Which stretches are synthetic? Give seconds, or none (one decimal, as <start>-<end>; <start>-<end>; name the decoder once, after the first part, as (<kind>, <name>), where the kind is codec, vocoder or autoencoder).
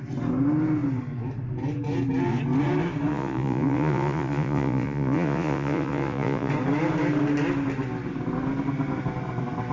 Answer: 3.1-6.5 (vocoder, Vocos)